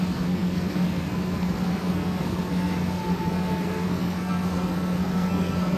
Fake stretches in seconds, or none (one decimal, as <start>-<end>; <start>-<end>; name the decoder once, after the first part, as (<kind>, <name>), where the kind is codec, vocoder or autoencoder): 0.0-5.8 (codec, SNAC)